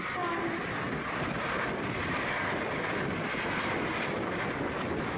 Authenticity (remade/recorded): recorded